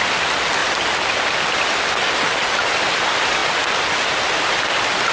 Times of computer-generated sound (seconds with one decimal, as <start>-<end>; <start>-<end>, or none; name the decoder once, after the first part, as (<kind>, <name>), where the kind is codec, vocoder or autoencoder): none